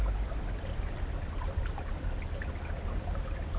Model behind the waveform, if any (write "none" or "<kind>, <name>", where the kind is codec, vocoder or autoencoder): none